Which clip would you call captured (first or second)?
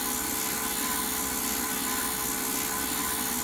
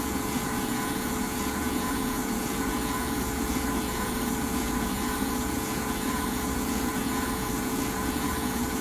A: first